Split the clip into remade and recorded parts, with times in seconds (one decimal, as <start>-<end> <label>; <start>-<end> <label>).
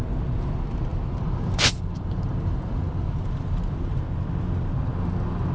0.0-0.9 recorded; 0.9-4.0 remade; 4.0-5.5 recorded